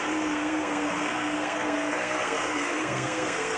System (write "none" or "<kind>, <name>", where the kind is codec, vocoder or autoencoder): codec, SNAC